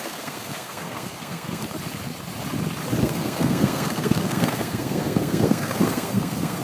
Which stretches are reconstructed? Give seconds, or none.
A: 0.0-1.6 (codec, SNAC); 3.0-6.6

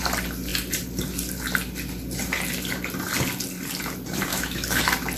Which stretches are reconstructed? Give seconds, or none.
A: 4.3-4.8 (autoencoder, DAC-VAE)

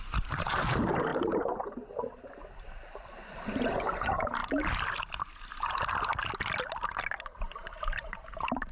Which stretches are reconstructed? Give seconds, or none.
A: 0.0-4.4 (vocoder, BigVGAN v2); 7.8-8.7

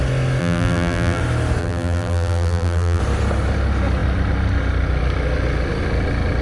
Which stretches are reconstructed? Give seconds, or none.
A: 0.4-1.2 (vocoder, BigVGAN v2); 1.6-3.0

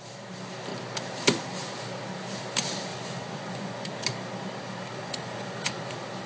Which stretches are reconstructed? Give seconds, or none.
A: 2.9-3.9 (vocoder, Vocos); 5.0-5.8

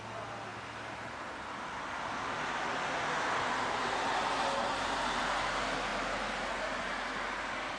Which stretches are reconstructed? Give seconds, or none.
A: none

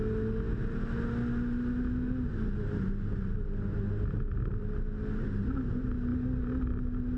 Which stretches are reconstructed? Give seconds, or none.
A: none